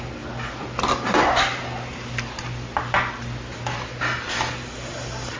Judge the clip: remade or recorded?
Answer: recorded